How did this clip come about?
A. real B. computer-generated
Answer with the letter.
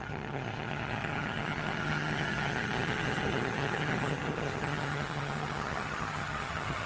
B